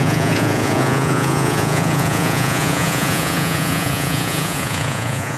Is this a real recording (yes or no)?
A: no